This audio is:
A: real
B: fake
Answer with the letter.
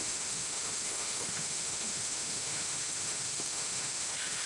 B